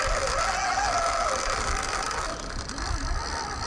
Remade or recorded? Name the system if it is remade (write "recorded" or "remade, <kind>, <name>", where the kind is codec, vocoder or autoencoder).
recorded